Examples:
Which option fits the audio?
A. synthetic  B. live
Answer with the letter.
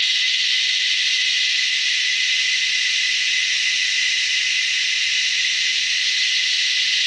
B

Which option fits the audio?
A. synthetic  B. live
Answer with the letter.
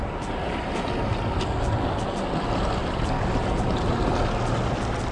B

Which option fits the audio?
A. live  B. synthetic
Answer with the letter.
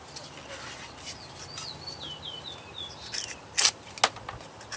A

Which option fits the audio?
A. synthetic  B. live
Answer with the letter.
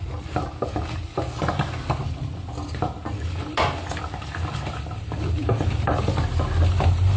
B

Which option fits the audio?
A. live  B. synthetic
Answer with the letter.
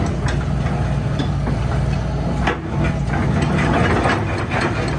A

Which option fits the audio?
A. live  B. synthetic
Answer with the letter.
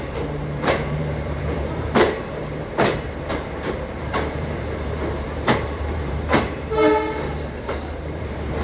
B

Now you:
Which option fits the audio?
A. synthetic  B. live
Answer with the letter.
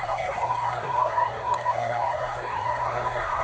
A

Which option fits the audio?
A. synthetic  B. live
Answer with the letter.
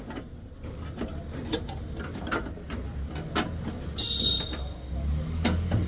B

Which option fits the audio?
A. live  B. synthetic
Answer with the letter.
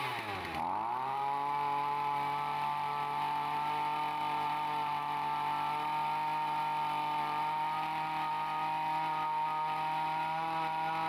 A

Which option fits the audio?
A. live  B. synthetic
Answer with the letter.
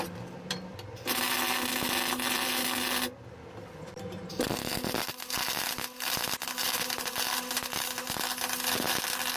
B